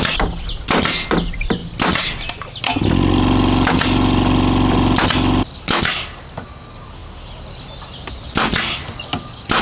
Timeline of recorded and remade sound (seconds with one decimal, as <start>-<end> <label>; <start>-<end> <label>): 0.0-9.6 recorded